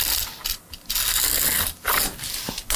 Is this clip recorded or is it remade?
recorded